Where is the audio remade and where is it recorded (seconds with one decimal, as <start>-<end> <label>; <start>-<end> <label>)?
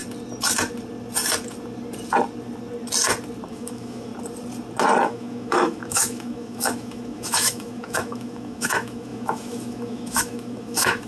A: 0.0-3.5 recorded; 3.5-4.1 remade; 4.1-5.0 recorded; 5.0-11.1 remade